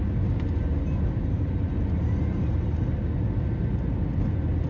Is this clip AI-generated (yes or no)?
no